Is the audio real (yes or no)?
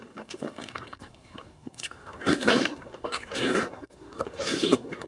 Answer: no